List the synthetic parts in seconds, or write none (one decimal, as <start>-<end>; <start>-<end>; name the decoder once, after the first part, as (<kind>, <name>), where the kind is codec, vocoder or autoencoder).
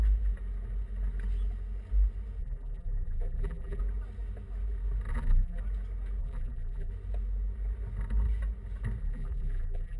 2.4-3.8 (vocoder, BigVGAN v2); 5.1-5.6; 6.2-6.9; 9.0-10.0